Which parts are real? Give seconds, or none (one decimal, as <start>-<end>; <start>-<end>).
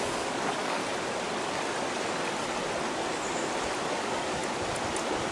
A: 0.8-4.0; 4.4-5.3